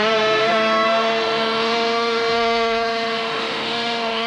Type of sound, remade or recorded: remade